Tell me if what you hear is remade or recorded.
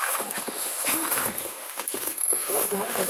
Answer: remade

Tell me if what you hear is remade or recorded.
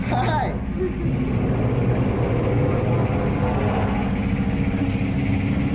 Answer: recorded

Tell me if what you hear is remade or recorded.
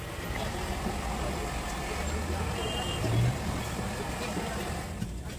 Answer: recorded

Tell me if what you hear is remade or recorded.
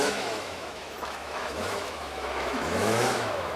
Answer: remade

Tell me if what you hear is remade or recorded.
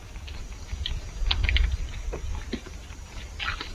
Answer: recorded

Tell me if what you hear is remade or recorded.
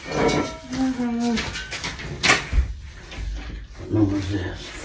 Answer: recorded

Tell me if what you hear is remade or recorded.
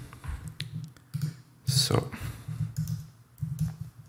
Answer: recorded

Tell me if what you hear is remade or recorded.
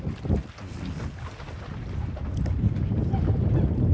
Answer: recorded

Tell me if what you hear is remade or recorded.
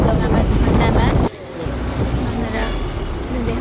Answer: recorded